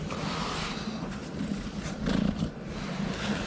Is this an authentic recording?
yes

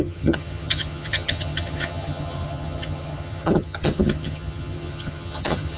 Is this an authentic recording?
no